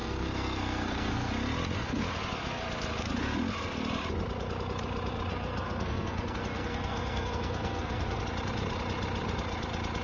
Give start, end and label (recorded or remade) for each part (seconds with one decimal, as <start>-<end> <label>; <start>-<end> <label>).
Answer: 0.0-1.3 remade; 1.3-5.3 recorded; 5.3-8.2 remade; 8.2-10.0 recorded